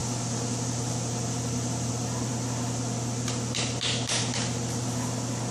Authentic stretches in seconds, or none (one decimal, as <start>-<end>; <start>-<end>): 0.0-5.5